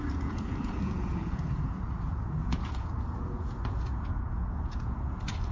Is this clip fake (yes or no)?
yes